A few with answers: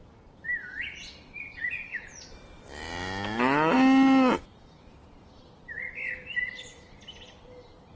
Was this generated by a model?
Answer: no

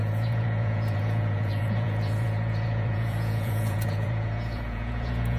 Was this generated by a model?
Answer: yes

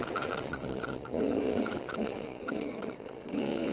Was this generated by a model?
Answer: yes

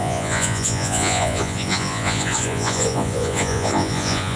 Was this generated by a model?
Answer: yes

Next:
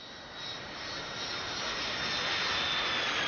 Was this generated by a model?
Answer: no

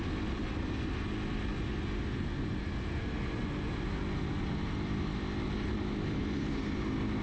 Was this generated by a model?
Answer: no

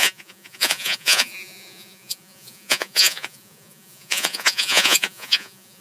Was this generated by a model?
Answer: yes